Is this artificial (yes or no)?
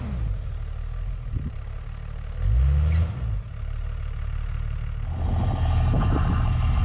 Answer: no